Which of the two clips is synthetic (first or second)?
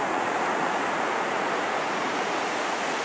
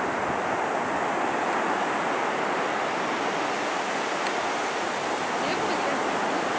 first